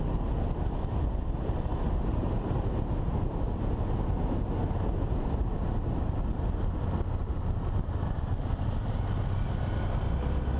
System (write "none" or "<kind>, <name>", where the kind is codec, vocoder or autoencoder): none